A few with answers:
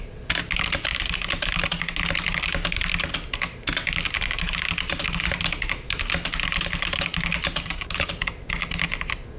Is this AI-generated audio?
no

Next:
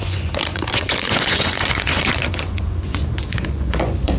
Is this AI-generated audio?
yes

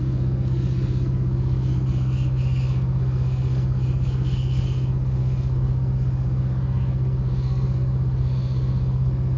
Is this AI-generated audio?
yes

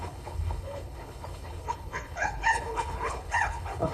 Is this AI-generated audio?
yes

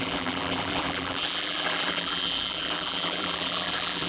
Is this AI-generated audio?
yes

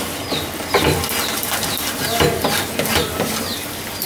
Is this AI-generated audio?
no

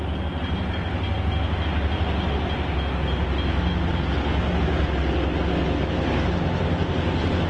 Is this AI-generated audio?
no